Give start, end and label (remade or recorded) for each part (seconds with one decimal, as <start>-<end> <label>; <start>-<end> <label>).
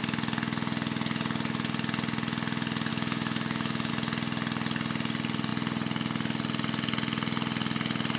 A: 0.0-2.9 recorded; 2.9-3.9 remade; 3.9-8.2 recorded